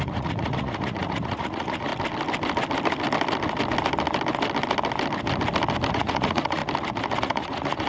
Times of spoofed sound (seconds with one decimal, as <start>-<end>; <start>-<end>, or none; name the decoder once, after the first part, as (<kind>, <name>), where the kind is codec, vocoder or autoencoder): 0.0-1.9 (vocoder, Vocos); 5.9-6.6; 7.2-7.9